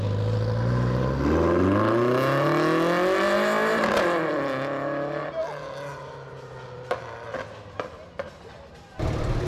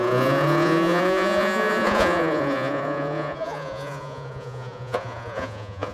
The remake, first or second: second